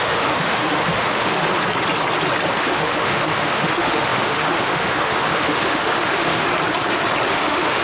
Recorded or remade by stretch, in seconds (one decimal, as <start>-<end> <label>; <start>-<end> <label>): 0.0-1.4 remade; 1.4-2.5 recorded; 2.5-6.5 remade; 6.5-7.3 recorded; 7.3-7.8 remade